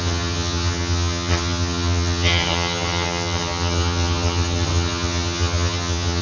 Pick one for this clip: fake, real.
fake